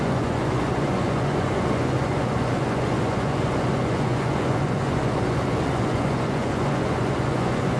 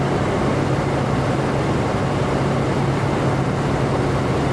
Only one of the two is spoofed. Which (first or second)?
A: first